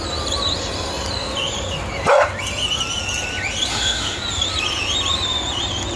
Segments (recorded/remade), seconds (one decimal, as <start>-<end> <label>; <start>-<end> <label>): 0.0-3.7 recorded; 3.7-4.2 remade; 4.2-6.0 recorded